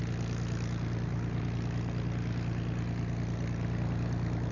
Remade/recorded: recorded